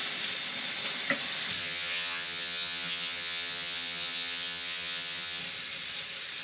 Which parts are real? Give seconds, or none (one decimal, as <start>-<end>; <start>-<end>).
0.0-1.6; 5.4-6.4